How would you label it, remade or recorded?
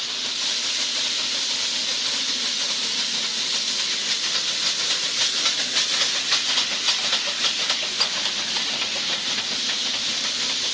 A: recorded